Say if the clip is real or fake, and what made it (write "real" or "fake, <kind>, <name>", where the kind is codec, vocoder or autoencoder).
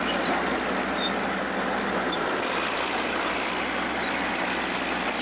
real